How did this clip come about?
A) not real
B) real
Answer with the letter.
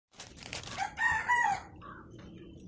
B